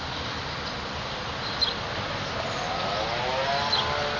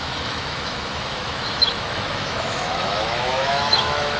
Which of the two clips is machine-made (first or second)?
second